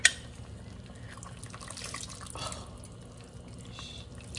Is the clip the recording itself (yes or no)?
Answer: yes